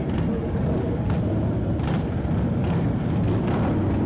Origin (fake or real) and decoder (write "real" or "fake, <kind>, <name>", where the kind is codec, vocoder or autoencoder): real